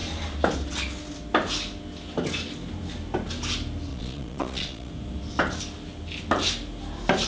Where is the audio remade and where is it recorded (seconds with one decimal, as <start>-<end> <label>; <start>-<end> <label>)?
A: 0.0-3.9 recorded; 3.9-4.9 remade; 4.9-7.3 recorded